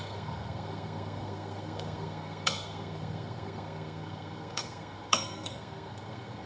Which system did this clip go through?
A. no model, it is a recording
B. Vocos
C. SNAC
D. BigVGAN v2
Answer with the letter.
C